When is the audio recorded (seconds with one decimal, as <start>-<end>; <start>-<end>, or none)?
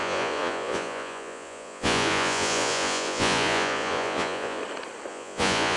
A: 4.6-5.1